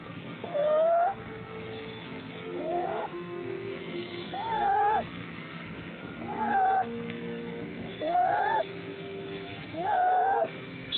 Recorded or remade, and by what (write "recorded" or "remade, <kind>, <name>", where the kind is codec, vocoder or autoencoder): remade, codec, SNAC